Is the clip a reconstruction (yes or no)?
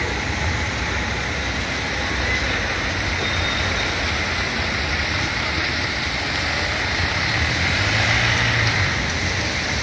no